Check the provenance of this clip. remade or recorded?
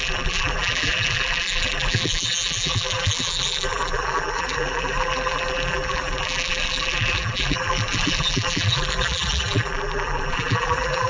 remade